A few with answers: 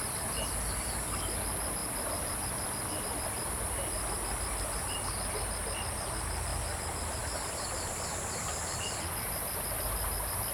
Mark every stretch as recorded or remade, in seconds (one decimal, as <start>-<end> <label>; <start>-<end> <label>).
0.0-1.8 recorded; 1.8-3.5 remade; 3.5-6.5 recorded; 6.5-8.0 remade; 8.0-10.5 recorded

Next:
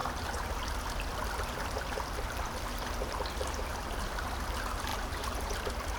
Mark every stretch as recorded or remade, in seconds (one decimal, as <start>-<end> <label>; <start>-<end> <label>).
0.0-1.3 recorded; 1.3-6.0 remade

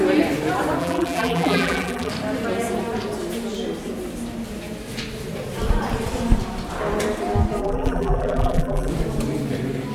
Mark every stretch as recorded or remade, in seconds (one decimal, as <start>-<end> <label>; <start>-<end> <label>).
0.0-0.8 recorded; 0.8-2.1 remade; 2.1-7.6 recorded; 7.6-8.9 remade; 8.9-9.9 recorded

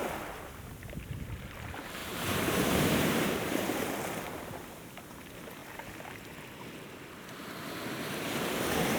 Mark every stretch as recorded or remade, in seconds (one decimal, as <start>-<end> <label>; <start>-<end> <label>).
0.0-2.0 recorded; 2.0-3.8 remade; 3.8-9.0 recorded

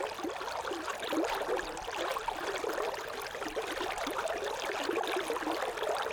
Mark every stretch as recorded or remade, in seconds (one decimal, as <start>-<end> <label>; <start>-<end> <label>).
0.0-2.1 recorded; 2.1-6.1 remade